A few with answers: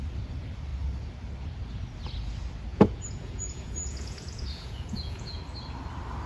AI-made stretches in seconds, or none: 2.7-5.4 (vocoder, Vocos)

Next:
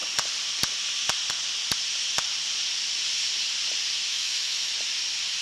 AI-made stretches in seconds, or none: 4.1-4.7 (autoencoder, DAC-VAE)

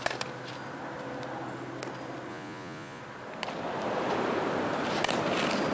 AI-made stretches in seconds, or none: 2.3-3.0 (vocoder, Vocos)

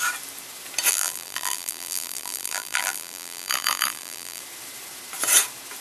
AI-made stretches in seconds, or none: 0.9-4.4 (vocoder, BigVGAN v2)

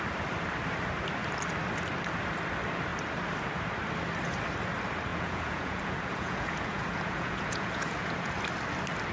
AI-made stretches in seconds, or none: 5.1-8.3 (vocoder, Vocos)

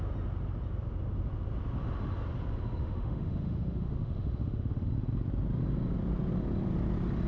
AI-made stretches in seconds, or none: 2.8-4.9 (autoencoder, DAC-VAE)

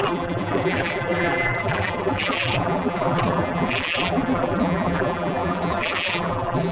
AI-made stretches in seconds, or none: 0.0-6.7 (vocoder, BigVGAN v2)